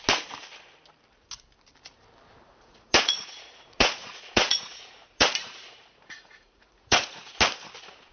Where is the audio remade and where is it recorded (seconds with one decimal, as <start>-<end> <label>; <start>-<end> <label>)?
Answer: 0.0-2.5 recorded; 2.5-7.4 remade; 7.4-8.1 recorded